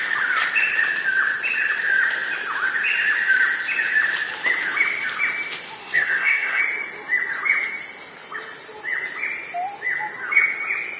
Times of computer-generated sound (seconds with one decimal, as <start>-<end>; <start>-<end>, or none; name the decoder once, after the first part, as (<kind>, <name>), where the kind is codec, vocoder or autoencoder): 5.8-6.6 (codec, SNAC)